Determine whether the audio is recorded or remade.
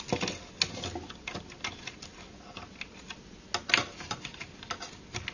recorded